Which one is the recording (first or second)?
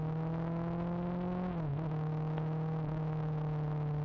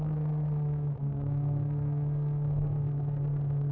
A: first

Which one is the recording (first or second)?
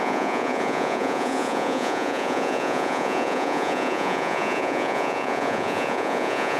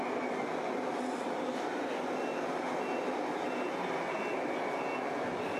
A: second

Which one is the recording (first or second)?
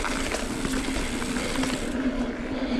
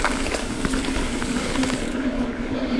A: first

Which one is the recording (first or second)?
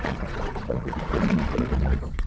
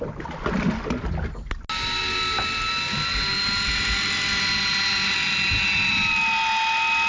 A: second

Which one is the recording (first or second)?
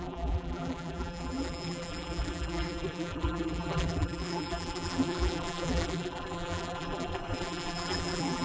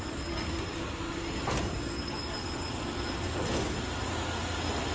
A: second